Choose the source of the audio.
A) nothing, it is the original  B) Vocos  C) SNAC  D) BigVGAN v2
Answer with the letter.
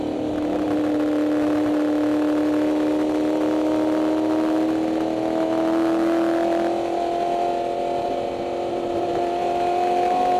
A